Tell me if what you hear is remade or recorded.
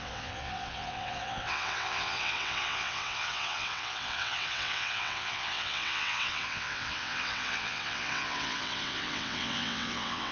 remade